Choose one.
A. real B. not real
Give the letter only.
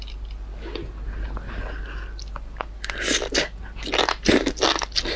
A